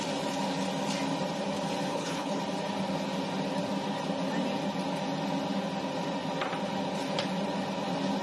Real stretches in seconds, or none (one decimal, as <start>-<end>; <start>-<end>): 0.0-1.9; 2.4-8.2